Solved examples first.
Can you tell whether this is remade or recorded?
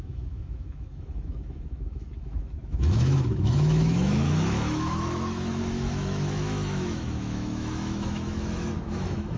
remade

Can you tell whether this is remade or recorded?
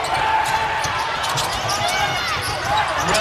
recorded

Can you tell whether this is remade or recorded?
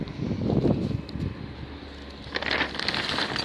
recorded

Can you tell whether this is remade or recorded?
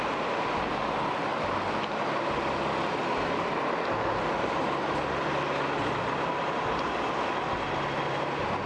recorded